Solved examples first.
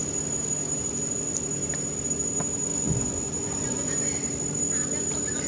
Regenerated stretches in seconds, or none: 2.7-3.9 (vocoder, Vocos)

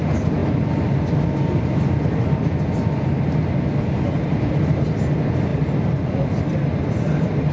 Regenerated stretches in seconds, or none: none

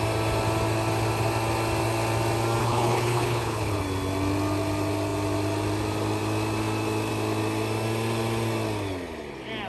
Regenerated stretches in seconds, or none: 2.6-3.8 (codec, HILCodec)